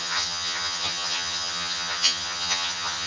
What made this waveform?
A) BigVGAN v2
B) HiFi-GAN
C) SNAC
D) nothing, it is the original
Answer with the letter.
B